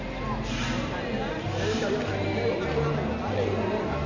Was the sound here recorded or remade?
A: recorded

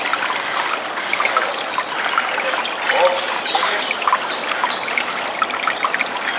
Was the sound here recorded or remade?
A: recorded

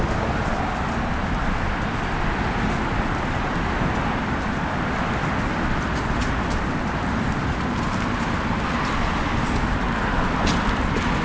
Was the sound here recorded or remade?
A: recorded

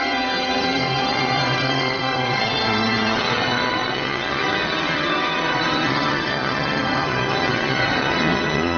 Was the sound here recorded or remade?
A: remade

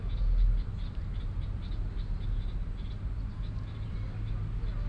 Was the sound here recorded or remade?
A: recorded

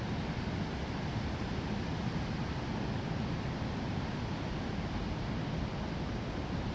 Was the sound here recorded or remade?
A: recorded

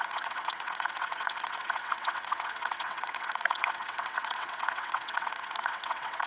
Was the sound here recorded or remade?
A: remade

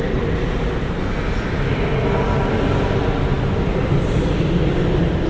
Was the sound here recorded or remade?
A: recorded